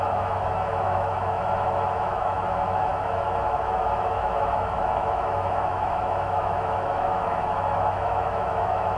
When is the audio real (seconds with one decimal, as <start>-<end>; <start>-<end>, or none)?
none